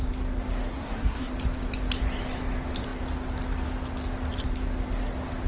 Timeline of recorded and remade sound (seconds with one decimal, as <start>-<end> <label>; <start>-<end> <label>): 0.0-0.7 recorded; 0.7-1.3 remade; 1.3-5.5 recorded